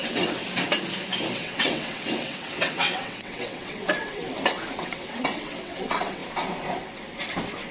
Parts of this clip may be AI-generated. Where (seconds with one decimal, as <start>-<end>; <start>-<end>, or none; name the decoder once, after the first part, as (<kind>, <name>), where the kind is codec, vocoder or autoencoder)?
0.0-0.4 (vocoder, WaveNeXt); 1.3-4.2; 4.8-6.2